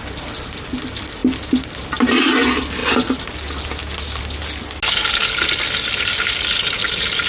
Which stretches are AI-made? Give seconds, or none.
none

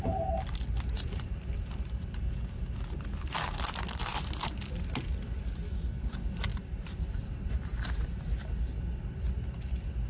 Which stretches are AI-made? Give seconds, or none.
0.9-2.6 (vocoder, BigVGAN v2); 6.5-8.5